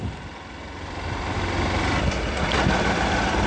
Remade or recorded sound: recorded